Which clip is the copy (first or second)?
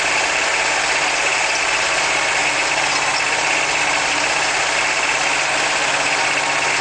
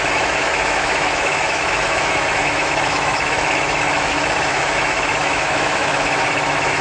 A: second